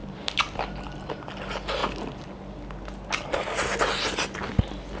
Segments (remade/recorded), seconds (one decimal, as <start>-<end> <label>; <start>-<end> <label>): 0.0-5.0 recorded